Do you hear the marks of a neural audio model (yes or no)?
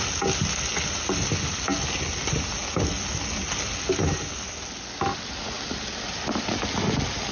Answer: no